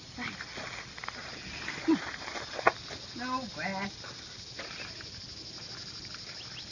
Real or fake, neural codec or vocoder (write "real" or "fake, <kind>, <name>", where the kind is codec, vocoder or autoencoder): real